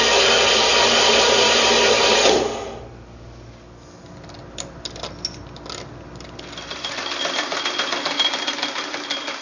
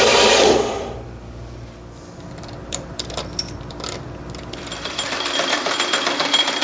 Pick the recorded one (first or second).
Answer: first